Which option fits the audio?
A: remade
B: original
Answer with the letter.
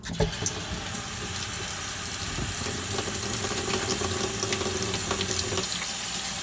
B